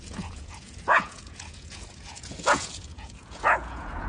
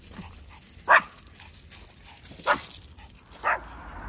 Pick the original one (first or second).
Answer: second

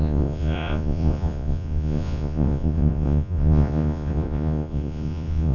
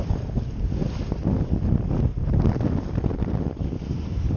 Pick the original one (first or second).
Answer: second